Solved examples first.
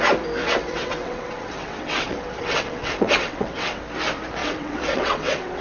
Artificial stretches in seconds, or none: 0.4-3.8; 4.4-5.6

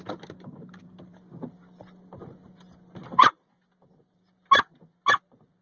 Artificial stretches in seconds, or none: 3.0-3.6

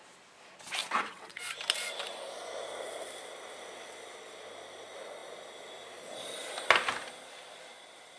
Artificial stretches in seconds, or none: 0.8-1.5

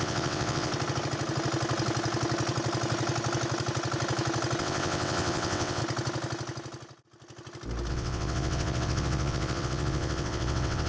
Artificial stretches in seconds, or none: 0.0-0.7; 4.6-5.8; 7.9-10.9

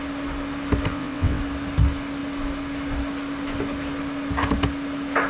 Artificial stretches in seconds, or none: 0.9-1.4

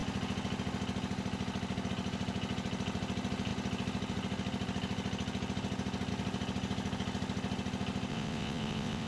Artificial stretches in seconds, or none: 8.1-9.1

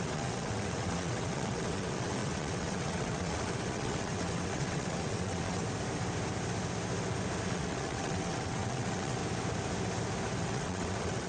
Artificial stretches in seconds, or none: 0.0-5.6; 7.5-9.2; 10.4-11.3

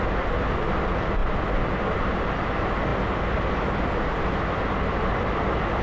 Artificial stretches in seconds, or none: none